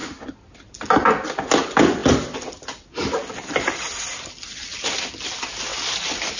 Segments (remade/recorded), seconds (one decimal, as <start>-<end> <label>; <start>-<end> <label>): 0.0-2.0 recorded; 2.0-5.1 remade; 5.1-5.7 recorded; 5.7-6.4 remade

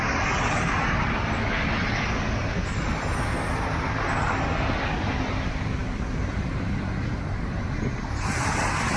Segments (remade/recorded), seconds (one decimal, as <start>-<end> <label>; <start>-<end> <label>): 0.0-5.8 recorded; 5.8-9.0 remade

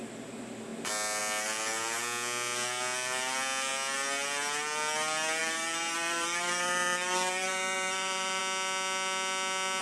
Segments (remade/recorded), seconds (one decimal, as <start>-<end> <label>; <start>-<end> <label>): 0.0-5.4 recorded; 5.4-8.4 remade; 8.4-9.8 recorded

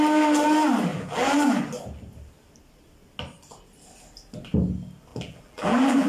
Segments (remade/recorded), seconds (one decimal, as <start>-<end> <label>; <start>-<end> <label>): 0.0-0.9 recorded; 0.9-1.6 remade; 1.6-5.1 recorded; 5.1-6.1 remade

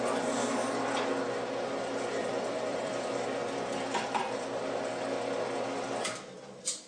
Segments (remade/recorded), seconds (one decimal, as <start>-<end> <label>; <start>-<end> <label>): 0.0-2.2 recorded; 2.2-4.2 remade; 4.2-6.9 recorded